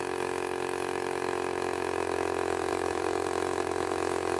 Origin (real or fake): fake